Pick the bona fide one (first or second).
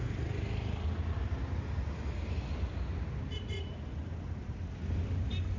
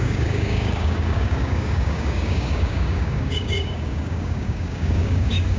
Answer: first